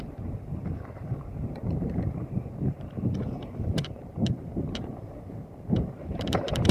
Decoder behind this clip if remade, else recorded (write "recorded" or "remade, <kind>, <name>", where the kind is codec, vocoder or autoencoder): remade, vocoder, BigVGAN v2